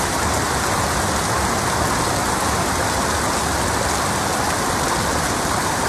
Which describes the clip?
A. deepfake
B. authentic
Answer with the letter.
B